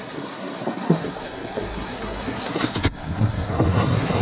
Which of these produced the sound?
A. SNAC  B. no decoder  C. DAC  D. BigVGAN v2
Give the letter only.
A